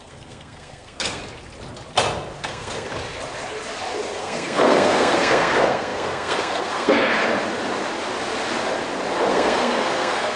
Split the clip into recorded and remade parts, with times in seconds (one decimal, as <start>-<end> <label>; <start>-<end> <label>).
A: 0.0-1.2 remade; 1.2-2.4 recorded; 2.4-2.9 remade; 2.9-4.2 recorded; 4.2-7.2 remade; 7.2-9.3 recorded; 9.3-10.4 remade

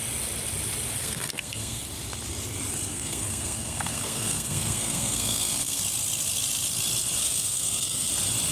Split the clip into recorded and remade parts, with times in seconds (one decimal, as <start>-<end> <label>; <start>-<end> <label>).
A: 0.0-1.0 recorded; 1.0-1.8 remade; 1.8-2.9 recorded; 2.9-5.8 remade; 5.8-7.2 recorded; 7.2-8.1 remade; 8.1-8.5 recorded

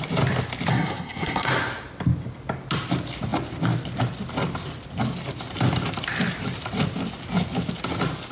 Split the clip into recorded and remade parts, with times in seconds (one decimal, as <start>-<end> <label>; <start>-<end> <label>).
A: 0.0-0.7 recorded; 0.7-1.5 remade; 1.5-8.3 recorded

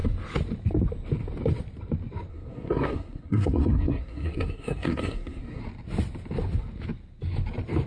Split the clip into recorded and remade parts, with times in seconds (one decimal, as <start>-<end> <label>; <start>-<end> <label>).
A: 0.0-2.3 recorded; 2.3-5.6 remade; 5.6-7.9 recorded

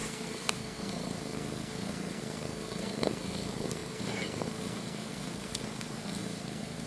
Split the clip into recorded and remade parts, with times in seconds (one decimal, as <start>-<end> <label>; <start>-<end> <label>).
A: 0.0-6.9 remade